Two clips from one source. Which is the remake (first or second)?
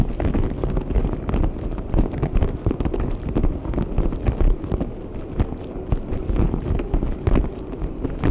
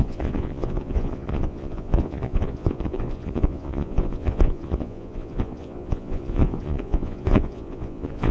second